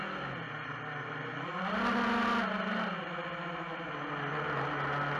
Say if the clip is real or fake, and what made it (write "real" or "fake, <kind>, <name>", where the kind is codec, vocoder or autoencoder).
real